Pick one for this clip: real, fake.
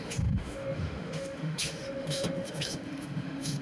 fake